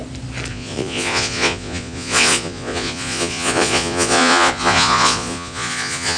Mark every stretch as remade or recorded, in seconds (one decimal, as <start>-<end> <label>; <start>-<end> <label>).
0.0-0.5 recorded; 0.5-6.2 remade